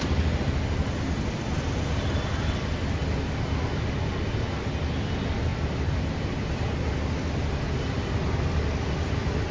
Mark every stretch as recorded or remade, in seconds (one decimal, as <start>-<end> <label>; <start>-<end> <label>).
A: 0.0-9.5 recorded